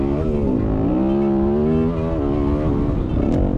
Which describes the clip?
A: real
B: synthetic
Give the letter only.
A